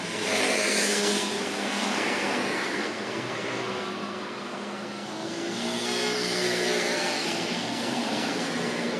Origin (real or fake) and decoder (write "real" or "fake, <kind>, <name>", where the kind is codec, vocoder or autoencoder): fake, codec, SNAC